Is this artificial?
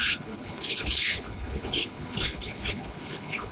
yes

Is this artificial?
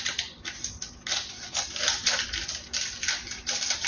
no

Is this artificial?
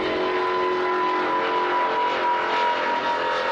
no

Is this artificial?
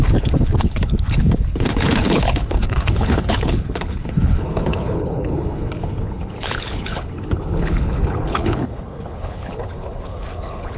yes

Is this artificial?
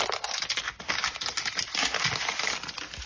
no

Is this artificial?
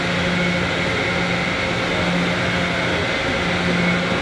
no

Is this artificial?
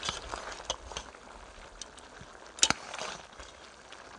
no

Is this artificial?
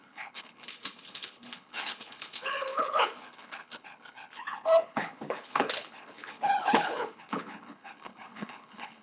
yes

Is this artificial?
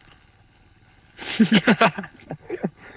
yes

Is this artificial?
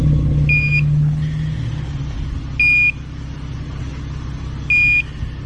no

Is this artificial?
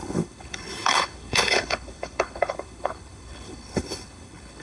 yes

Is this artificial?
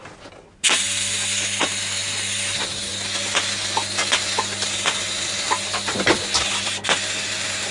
no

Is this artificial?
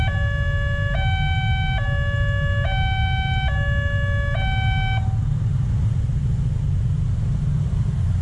no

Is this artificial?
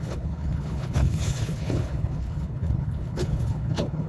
yes